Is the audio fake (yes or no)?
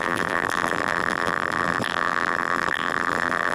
yes